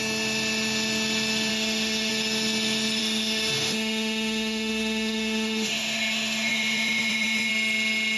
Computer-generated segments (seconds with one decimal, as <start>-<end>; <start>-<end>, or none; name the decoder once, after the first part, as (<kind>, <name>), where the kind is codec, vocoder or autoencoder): 1.5-2.1 (autoencoder, DAC-VAE); 3.0-7.5